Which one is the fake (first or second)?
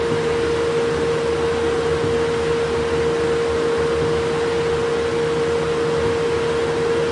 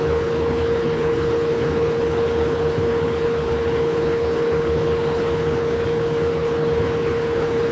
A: second